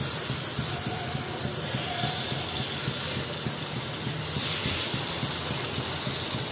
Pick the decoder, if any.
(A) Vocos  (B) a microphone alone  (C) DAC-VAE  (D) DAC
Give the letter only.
B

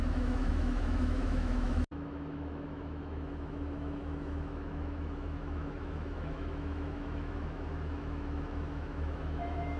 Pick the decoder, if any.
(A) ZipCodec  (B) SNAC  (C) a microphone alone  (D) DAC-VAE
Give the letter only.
D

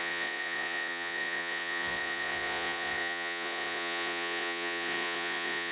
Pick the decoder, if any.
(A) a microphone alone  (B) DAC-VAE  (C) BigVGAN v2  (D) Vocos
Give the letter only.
D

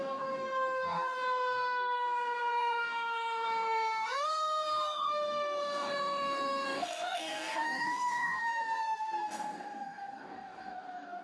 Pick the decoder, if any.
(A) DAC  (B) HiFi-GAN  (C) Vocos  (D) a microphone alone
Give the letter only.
A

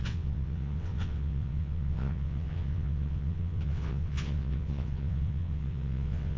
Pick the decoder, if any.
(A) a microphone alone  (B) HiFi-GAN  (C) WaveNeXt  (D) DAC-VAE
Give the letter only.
C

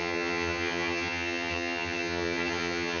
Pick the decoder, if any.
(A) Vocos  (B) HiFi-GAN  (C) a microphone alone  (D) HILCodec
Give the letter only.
B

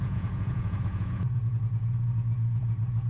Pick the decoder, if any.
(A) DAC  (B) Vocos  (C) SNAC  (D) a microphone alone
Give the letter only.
B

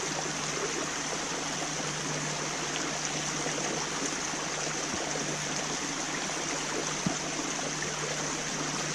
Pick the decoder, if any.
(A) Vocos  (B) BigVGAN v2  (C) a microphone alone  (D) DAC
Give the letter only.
C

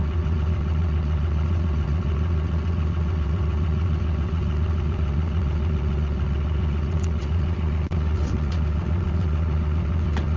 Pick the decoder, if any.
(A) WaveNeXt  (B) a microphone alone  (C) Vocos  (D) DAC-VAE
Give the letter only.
A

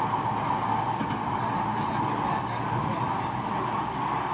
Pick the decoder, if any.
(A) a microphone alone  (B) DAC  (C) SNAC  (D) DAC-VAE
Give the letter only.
A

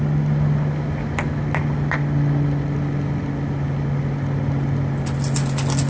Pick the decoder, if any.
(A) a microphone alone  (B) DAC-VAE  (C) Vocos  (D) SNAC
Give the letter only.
A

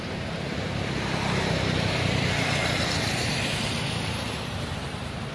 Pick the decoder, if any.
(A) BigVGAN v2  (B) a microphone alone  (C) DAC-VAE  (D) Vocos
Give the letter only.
A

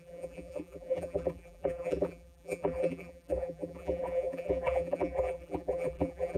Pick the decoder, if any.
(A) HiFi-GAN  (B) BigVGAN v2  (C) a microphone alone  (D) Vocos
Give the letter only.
B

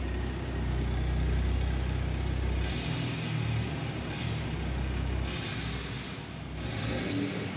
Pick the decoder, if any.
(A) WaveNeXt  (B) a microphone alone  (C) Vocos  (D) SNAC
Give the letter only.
B